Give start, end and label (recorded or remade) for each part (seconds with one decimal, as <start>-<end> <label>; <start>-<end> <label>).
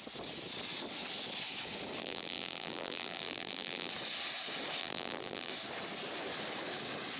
0.0-2.0 recorded; 2.0-3.9 remade; 3.9-4.8 recorded; 4.8-5.5 remade; 5.5-7.2 recorded